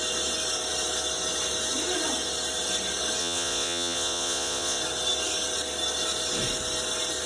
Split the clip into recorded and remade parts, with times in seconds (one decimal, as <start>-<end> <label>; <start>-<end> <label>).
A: 0.0-3.2 recorded; 3.2-4.8 remade; 4.8-7.3 recorded

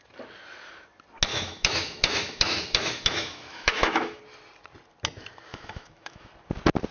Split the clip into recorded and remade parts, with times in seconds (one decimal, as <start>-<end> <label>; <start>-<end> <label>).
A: 0.0-1.3 recorded; 1.3-4.2 remade; 4.2-5.5 recorded; 5.5-6.3 remade; 6.3-6.9 recorded

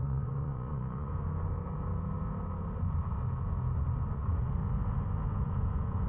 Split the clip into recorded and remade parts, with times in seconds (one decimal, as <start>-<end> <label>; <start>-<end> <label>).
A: 0.0-1.1 remade; 1.1-4.1 recorded; 4.1-4.6 remade; 4.6-5.4 recorded; 5.4-6.1 remade

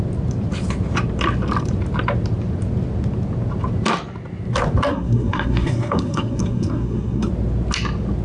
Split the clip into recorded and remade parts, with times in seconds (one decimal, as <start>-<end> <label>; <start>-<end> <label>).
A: 0.0-4.9 recorded; 4.9-7.3 remade; 7.3-8.2 recorded

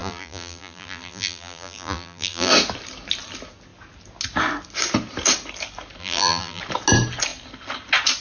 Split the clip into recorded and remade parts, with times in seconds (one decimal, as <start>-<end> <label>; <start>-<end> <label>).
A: 0.0-2.5 remade; 2.5-6.0 recorded; 6.0-6.6 remade; 6.6-8.2 recorded

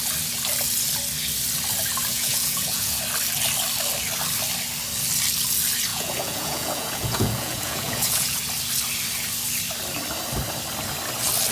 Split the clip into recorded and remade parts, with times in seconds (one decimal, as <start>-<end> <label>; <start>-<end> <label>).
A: 0.0-2.1 recorded; 2.1-3.0 remade; 3.0-5.9 recorded; 5.9-8.4 remade; 8.4-11.5 recorded